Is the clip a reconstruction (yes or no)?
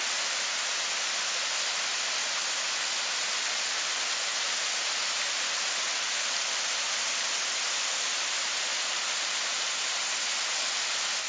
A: no